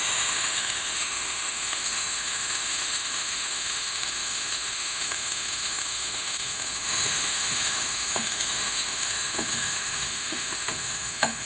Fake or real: fake